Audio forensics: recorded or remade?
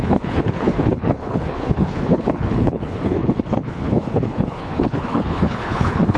remade